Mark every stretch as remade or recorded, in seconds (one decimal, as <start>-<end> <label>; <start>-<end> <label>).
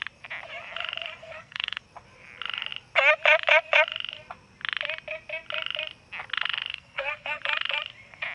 0.0-1.2 recorded; 1.2-1.8 remade; 1.8-6.7 recorded; 6.7-7.4 remade; 7.4-8.3 recorded